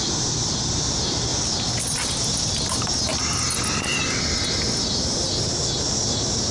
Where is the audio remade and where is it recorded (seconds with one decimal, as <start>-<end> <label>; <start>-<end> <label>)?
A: 0.0-6.5 recorded